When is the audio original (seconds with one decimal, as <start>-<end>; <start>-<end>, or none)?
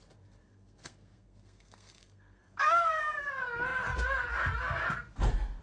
0.0-0.4; 3.3-5.6